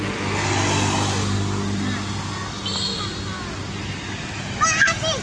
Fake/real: real